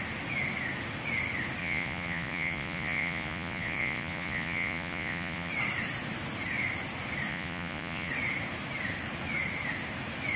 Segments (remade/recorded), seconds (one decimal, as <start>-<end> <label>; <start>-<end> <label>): 0.0-1.6 recorded; 1.6-5.5 remade; 5.5-7.3 recorded; 7.3-8.1 remade; 8.1-10.4 recorded